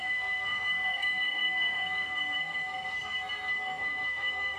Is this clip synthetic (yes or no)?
yes